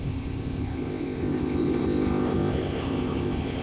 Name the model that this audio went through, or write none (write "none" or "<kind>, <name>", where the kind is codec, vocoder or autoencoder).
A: codec, ZipCodec